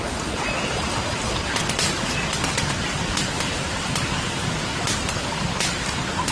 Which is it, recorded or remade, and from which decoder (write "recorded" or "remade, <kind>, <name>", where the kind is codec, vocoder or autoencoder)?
recorded